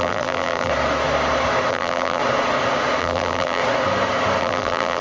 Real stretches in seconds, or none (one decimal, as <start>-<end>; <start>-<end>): 0.7-1.7; 2.2-3.0; 3.6-4.4